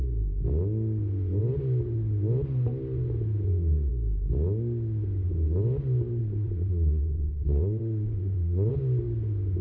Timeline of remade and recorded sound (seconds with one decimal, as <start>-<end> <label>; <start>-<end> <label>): 0.0-6.2 recorded; 6.2-8.7 remade; 8.7-9.6 recorded